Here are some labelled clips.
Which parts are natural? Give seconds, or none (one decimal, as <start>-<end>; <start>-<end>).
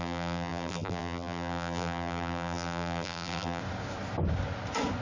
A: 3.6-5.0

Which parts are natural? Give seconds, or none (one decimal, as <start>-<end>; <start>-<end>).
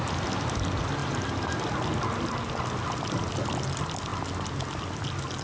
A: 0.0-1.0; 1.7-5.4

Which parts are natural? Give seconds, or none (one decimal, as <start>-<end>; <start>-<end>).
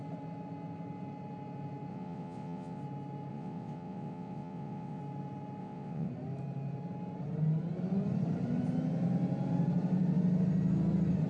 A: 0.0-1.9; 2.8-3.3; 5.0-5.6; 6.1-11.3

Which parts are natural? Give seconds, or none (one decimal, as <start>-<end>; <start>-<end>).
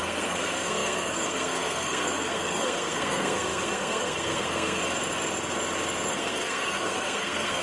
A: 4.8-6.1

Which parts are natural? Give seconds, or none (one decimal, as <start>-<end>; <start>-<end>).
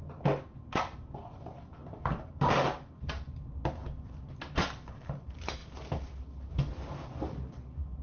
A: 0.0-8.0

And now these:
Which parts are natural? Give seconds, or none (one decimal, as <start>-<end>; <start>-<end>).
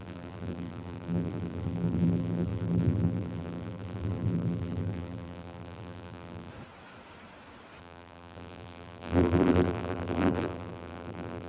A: 6.5-7.8